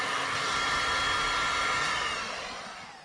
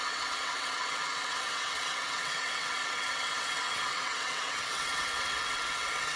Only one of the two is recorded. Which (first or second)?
first